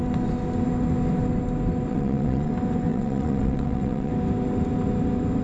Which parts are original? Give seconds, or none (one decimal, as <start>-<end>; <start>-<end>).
0.0-1.9; 2.5-2.9; 4.1-5.4